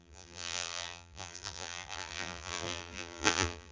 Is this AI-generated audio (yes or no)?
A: yes